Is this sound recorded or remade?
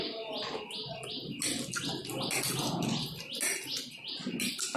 recorded